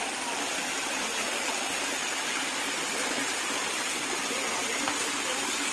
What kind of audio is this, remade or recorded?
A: recorded